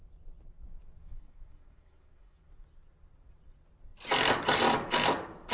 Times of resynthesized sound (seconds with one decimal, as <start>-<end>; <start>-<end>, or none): 1.0-2.4